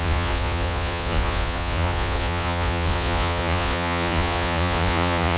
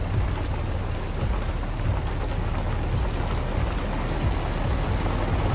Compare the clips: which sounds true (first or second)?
second